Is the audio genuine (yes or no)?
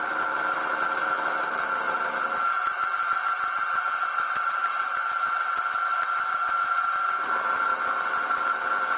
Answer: yes